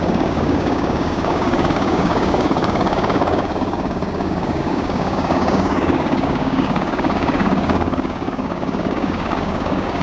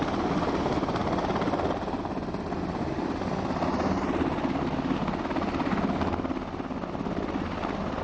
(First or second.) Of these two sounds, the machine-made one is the first